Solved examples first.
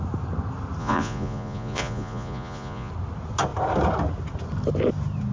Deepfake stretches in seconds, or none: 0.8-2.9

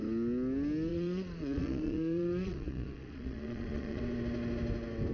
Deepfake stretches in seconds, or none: 0.9-4.0

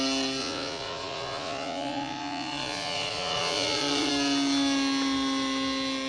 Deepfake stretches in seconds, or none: 0.4-4.1

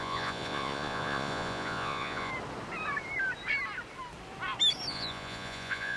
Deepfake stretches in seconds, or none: 0.0-2.3; 4.9-6.0

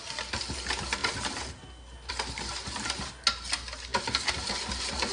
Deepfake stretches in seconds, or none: none

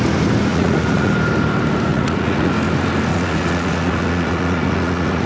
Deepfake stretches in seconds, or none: 0.5-1.1; 1.9-2.5; 3.1-5.3